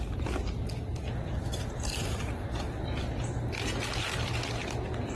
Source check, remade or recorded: recorded